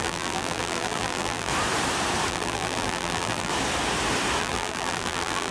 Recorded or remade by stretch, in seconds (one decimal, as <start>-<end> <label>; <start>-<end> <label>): 0.0-1.5 remade; 1.5-2.3 recorded; 2.3-3.5 remade; 3.5-4.4 recorded; 4.4-5.5 remade